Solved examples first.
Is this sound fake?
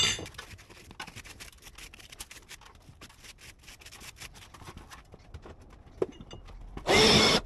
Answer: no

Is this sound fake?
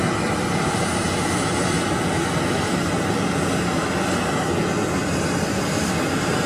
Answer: no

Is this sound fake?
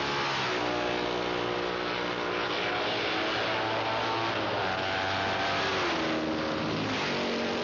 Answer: no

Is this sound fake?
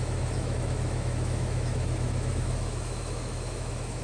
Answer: yes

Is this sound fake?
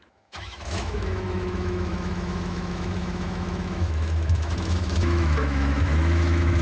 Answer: yes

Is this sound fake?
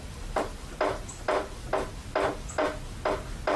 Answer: no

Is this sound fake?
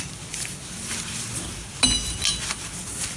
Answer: no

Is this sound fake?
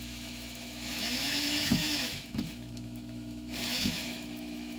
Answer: yes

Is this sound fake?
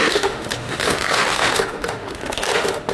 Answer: yes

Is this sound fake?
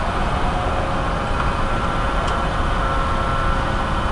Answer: no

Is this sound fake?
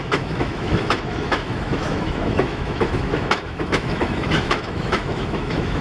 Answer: yes